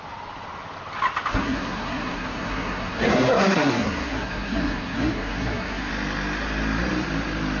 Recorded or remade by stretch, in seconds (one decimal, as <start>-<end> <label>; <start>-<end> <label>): 0.0-1.3 recorded; 1.3-5.9 remade; 5.9-7.6 recorded